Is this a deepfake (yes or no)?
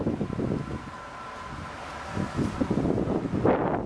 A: no